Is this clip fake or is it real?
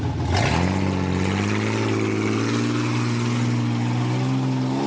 real